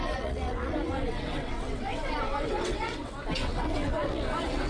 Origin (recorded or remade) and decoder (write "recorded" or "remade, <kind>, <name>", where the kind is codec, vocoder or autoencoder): remade, vocoder, WaveNeXt